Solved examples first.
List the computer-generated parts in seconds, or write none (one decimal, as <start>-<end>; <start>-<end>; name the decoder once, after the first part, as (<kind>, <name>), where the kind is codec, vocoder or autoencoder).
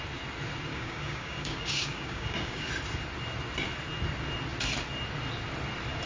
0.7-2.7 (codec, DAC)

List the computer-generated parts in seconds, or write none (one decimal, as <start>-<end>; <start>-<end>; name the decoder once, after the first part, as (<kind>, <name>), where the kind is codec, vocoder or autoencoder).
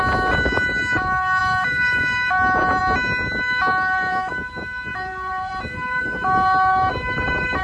1.4-2.8 (vocoder, BigVGAN v2); 3.7-4.3; 4.9-6.0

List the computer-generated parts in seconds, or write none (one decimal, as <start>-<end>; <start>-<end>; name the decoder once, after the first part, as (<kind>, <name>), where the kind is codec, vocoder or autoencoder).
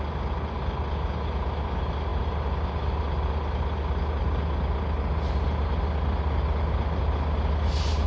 none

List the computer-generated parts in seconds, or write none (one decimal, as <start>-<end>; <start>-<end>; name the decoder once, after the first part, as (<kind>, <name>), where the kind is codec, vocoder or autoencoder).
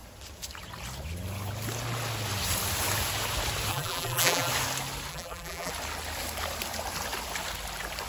3.7-4.5 (vocoder, BigVGAN v2); 5.1-5.7